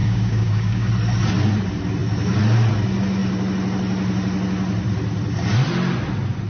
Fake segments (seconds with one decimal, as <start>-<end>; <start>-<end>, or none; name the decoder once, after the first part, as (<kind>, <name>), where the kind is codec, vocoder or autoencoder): 0.0-0.9 (codec, DAC)